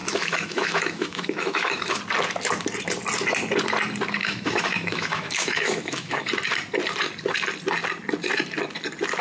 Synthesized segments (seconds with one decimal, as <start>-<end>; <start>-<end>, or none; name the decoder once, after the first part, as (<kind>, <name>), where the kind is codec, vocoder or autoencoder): 0.0-2.0 (autoencoder, DAC-VAE); 4.2-6.3